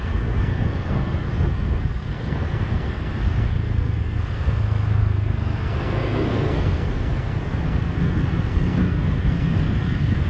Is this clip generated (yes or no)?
yes